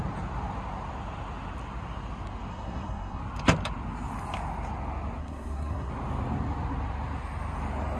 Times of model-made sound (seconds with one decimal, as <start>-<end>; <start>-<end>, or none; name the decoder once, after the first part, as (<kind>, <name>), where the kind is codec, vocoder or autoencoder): 2.5-3.2 (codec, SNAC); 5.2-5.9